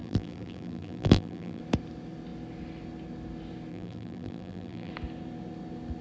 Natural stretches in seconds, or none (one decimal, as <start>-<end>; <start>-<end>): 1.6-3.7; 4.9-6.0